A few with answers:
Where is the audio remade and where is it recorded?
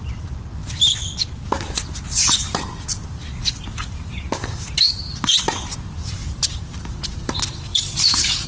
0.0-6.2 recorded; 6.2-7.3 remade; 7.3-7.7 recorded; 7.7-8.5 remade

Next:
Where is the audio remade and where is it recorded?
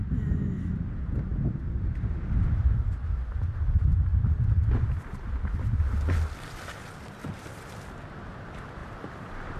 0.0-4.1 recorded; 4.1-5.3 remade; 5.3-9.6 recorded